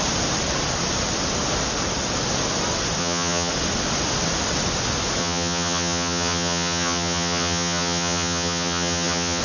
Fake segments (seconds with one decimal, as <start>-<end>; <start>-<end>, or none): 3.0-3.5; 5.2-9.4